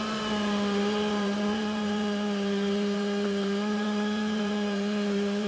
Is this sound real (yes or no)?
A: no